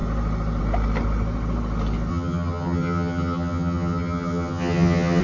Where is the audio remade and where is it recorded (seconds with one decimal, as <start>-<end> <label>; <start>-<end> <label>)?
0.0-2.1 recorded; 2.1-5.2 remade